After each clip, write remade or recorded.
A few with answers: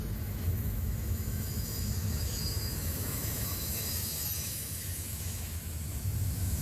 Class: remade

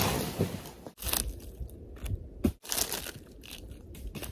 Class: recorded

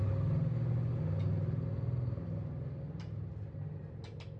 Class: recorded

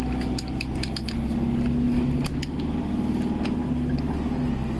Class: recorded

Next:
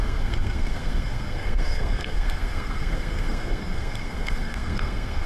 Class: remade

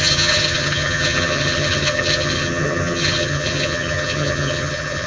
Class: remade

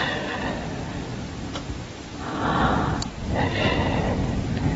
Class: recorded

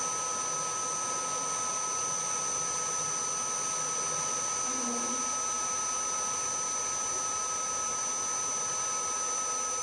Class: recorded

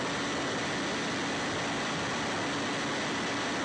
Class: recorded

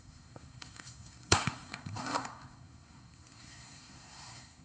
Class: remade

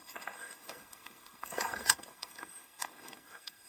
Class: remade